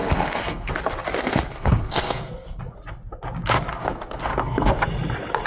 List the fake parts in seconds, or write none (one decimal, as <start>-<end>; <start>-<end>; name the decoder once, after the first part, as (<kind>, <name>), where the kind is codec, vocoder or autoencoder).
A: 0.0-0.7 (codec, SNAC); 1.3-2.6; 3.7-4.7